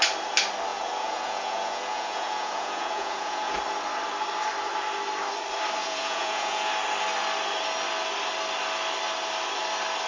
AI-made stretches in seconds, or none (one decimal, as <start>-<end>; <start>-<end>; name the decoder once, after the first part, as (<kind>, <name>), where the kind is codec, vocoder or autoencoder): 0.7-3.6 (vocoder, Vocos); 5.8-6.7